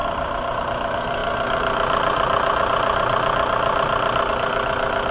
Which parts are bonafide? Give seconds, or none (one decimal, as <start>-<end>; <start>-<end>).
0.0-5.1